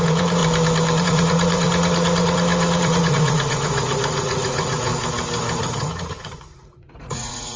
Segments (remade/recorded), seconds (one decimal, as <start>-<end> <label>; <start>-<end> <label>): 0.0-0.4 remade; 0.4-1.0 recorded; 1.0-4.9 remade; 4.9-5.6 recorded; 5.6-7.6 remade